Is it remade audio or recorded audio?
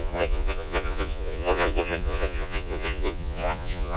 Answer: remade